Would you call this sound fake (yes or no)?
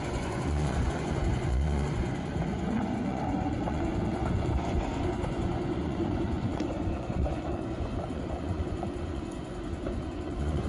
yes